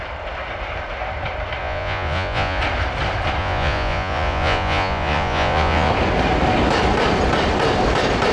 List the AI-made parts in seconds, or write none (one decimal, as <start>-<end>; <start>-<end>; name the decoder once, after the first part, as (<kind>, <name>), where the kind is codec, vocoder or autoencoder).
1.6-2.6 (vocoder, Vocos); 3.4-5.9